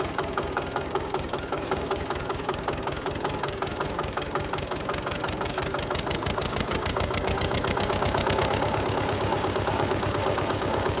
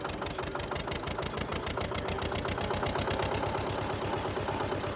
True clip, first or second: second